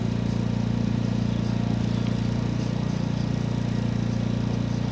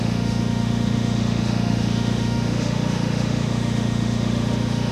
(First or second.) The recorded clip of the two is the first